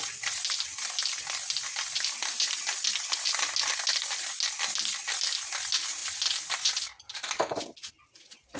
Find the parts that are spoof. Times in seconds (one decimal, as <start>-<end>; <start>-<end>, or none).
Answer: none